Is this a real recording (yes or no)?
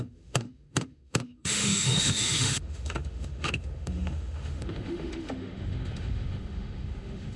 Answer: no